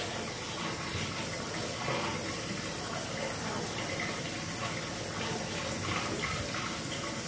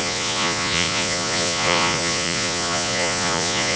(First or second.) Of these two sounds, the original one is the first